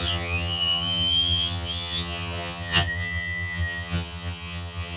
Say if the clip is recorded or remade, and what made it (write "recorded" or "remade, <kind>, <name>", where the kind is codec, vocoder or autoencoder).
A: remade, vocoder, HiFi-GAN